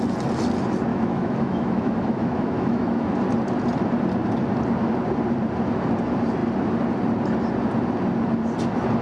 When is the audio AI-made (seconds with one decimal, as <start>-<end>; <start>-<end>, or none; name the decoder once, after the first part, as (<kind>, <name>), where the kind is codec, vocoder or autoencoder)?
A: 0.9-3.1 (autoencoder, DAC-VAE)

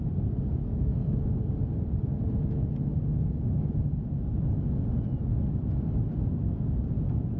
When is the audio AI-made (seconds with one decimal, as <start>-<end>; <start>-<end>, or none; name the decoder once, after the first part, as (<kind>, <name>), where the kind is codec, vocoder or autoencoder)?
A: 0.6-1.2 (codec, SNAC)

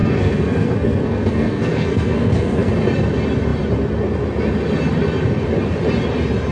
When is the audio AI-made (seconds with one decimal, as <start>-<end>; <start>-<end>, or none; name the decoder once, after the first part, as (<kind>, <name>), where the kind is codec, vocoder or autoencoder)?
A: 0.0-2.7 (codec, SNAC)

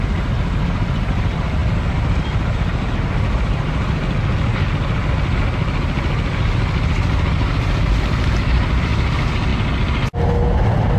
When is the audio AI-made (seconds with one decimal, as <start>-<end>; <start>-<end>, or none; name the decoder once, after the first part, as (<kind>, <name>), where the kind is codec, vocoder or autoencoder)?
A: none

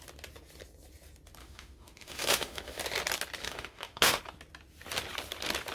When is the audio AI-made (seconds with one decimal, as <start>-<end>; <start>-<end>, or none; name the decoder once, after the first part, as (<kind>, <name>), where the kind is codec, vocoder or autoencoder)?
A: 1.4-2.8 (autoencoder, DAC-VAE); 3.4-4.2

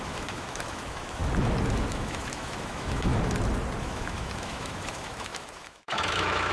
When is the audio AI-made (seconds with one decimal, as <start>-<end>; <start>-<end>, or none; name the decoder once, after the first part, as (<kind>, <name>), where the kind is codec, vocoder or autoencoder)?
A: 0.0-1.2 (autoencoder, DAC-VAE); 1.9-3.1; 3.8-6.5

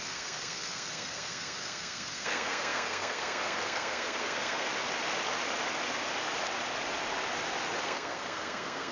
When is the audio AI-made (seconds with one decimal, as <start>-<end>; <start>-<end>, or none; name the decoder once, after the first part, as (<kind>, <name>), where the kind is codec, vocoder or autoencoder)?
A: 0.0-4.7 (codec, SNAC); 7.8-8.9